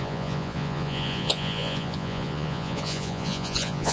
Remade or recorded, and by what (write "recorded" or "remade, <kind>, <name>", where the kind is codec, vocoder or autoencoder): remade, vocoder, Vocos